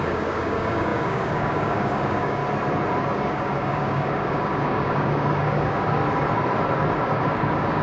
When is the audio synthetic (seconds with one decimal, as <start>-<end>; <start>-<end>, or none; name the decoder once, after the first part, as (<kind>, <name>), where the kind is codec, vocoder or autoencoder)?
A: 0.0-2.4 (codec, DAC); 3.1-6.0; 7.0-7.8